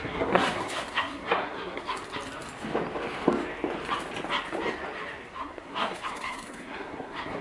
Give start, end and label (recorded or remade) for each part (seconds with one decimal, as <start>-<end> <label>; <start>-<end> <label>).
0.0-2.0 remade; 2.0-5.4 recorded; 5.4-7.4 remade